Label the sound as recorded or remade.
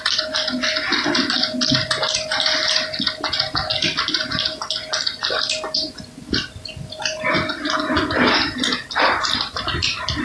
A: recorded